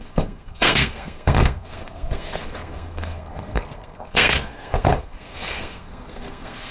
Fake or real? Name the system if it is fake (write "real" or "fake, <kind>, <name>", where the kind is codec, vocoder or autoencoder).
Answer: fake, codec, SNAC